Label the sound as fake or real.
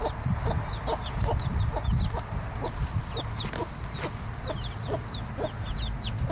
real